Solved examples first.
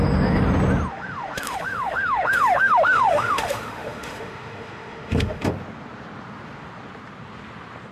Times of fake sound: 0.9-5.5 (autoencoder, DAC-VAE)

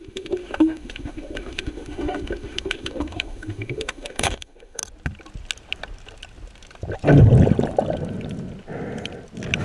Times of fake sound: 0.0-4.8 (autoencoder, DAC-VAE)

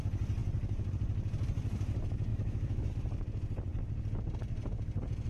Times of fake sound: 2.3-2.9 (autoencoder, DAC-VAE)

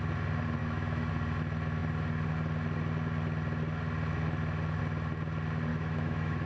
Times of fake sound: 0.6-1.1 (autoencoder, DAC-VAE); 5.7-6.5